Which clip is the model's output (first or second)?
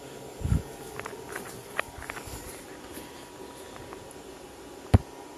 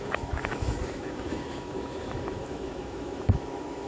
second